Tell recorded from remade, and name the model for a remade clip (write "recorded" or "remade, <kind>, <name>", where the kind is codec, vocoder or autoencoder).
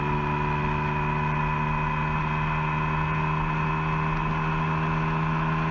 recorded